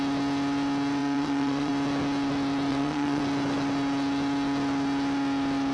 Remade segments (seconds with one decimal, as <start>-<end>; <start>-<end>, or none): 1.0-1.7; 2.7-3.2